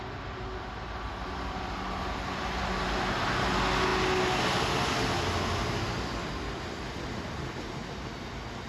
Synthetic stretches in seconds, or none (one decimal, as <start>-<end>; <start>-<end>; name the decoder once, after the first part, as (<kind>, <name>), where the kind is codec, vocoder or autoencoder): none